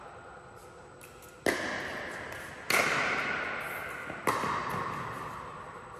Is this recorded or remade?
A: recorded